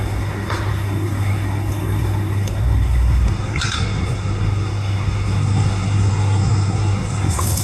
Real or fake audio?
fake